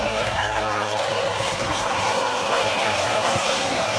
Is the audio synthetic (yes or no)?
yes